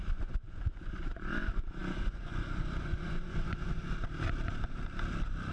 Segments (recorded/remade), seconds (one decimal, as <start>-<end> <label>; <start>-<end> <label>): 0.0-3.8 remade; 3.8-5.5 recorded